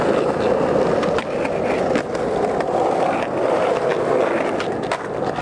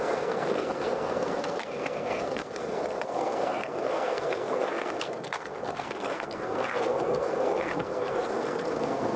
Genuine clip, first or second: first